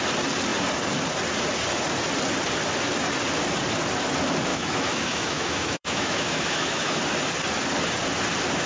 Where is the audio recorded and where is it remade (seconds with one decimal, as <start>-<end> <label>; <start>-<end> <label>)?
0.0-4.5 recorded; 4.5-7.0 remade; 7.0-8.7 recorded